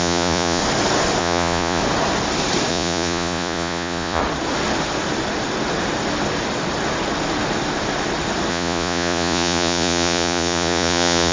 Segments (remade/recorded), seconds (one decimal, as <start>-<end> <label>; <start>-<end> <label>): 0.0-0.6 remade; 0.6-1.2 recorded; 1.2-1.8 remade; 1.8-2.7 recorded; 2.7-4.2 remade; 4.2-8.5 recorded; 8.5-11.3 remade